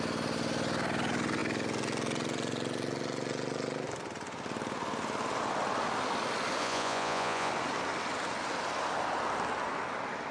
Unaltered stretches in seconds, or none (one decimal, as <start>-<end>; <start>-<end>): 0.0-6.6; 7.5-10.3